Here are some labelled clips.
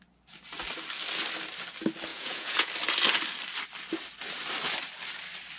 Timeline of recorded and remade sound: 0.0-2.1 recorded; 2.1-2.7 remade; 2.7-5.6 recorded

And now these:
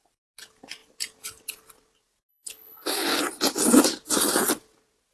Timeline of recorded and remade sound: 0.0-2.3 recorded; 2.3-3.2 remade; 3.2-5.1 recorded

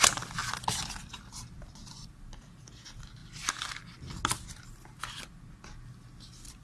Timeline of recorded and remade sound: 0.0-6.6 recorded

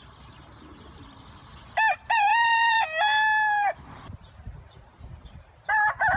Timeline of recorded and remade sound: 0.0-2.3 recorded; 2.3-5.7 remade; 5.7-6.2 recorded

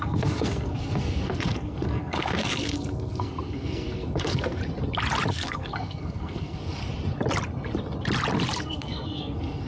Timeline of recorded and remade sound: 0.0-4.6 remade; 4.6-5.3 recorded; 5.3-6.8 remade; 6.8-8.6 recorded; 8.6-9.7 remade

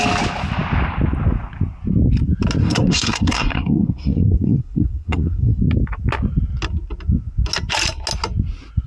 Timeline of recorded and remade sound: 0.0-2.6 recorded; 2.6-5.6 remade; 5.6-8.9 recorded

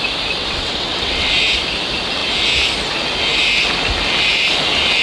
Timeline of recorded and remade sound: 0.0-0.4 recorded; 0.4-1.3 remade; 1.3-5.0 recorded

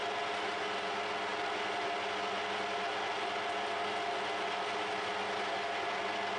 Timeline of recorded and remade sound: 0.0-6.4 recorded